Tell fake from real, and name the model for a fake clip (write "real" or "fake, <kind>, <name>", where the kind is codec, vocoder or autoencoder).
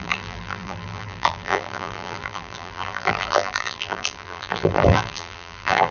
fake, vocoder, BigVGAN v2